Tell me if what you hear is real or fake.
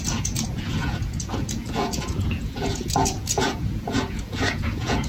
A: fake